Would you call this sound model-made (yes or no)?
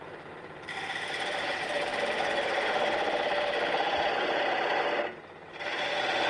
yes